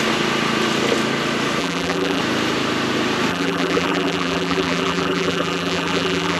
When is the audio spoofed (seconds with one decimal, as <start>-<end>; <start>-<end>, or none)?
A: 1.6-2.2; 3.3-6.4